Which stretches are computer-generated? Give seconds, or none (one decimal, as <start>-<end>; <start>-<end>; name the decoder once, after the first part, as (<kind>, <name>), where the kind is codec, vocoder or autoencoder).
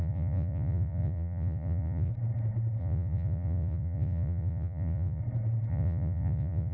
0.0-2.1 (vocoder, Vocos); 2.8-5.2; 5.7-6.7